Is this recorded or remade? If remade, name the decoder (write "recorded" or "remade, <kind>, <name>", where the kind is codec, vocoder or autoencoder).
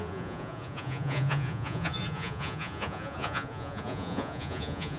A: remade, vocoder, Vocos